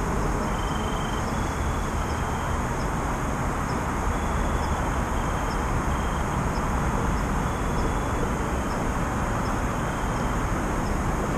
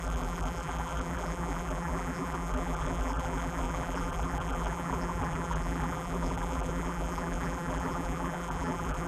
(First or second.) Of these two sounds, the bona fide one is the first